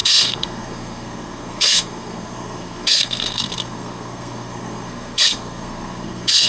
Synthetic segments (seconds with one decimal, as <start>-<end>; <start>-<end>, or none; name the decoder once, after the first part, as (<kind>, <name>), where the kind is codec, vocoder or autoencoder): 0.0-6.5 (codec, SNAC)